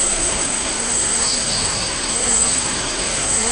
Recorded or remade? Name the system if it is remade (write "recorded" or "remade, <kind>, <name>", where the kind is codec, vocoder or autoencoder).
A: remade, codec, SNAC